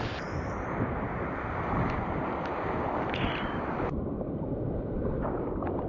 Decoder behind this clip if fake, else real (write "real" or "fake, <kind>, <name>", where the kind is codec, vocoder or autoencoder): real